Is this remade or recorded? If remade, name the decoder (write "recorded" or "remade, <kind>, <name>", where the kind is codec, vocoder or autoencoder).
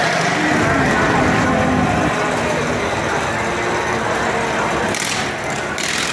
recorded